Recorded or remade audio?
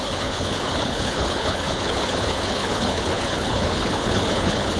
remade